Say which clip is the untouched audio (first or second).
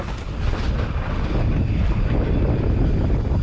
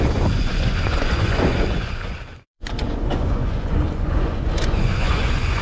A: first